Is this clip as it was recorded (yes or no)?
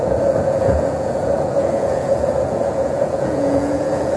no